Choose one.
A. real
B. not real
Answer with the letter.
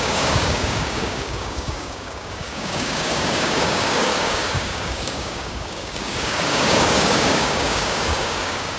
B